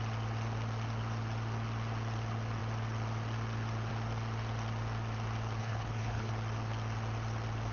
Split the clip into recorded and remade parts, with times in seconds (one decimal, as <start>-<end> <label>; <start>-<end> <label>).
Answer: 0.0-5.6 recorded; 5.6-6.3 remade; 6.3-7.7 recorded